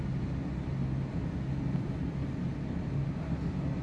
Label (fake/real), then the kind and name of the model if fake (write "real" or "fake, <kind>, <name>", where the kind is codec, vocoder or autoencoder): real